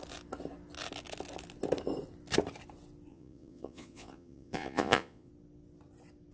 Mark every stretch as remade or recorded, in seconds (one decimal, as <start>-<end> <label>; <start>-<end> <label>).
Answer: 0.0-3.1 recorded; 3.1-5.3 remade; 5.3-6.3 recorded